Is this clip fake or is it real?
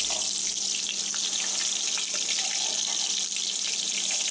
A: real